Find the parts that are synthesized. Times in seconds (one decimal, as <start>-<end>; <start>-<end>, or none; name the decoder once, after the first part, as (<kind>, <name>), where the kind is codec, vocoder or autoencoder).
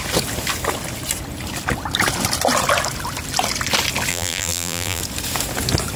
4.1-5.0 (vocoder, BigVGAN v2)